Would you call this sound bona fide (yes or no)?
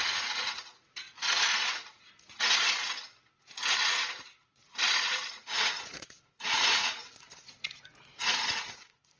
no